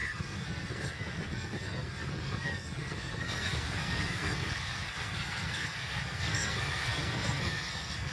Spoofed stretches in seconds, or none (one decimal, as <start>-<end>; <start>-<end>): 0.0-8.1